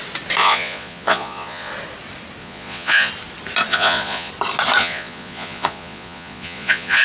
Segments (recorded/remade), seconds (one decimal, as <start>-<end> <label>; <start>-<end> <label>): 0.0-0.4 recorded; 0.4-1.7 remade; 1.7-2.4 recorded; 2.4-3.1 remade; 3.1-3.7 recorded; 3.7-4.3 remade; 4.3-4.8 recorded; 4.8-7.0 remade